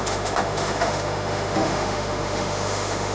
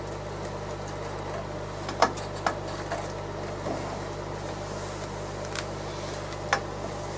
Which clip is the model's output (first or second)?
first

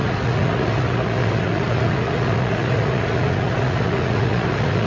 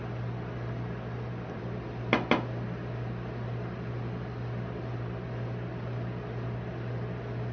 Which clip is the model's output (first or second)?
first